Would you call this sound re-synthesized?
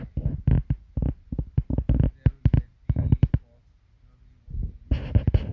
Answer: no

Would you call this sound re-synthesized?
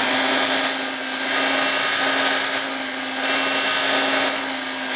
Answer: no